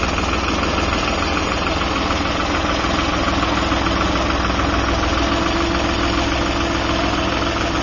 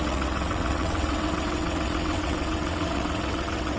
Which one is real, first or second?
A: first